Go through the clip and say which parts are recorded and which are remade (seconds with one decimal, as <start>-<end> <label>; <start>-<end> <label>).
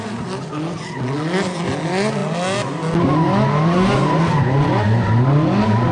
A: 0.0-5.9 recorded